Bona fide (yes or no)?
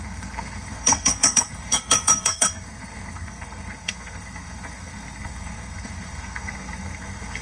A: no